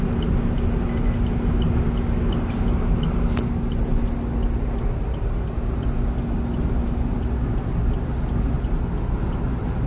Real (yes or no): yes